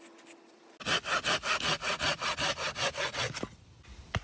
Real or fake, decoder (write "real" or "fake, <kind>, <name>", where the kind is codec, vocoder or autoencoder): real